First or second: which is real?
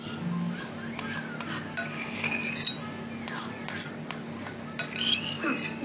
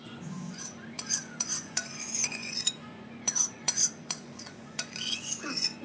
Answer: first